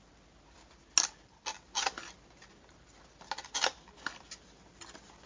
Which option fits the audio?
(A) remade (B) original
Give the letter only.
B